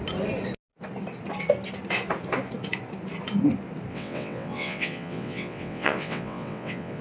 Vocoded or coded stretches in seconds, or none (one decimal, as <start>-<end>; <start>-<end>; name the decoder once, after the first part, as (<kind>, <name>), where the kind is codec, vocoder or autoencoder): 3.9-7.0 (vocoder, WaveNeXt)